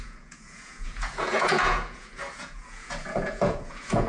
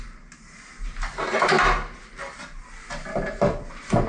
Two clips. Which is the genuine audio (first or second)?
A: second